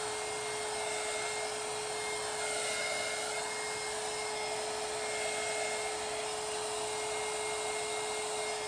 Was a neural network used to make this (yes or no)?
no